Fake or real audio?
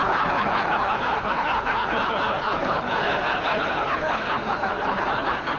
fake